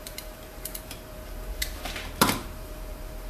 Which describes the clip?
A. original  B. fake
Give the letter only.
B